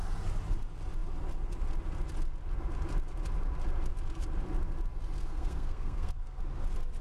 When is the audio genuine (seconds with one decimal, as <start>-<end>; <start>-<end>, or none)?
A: 0.0-5.2; 6.4-7.0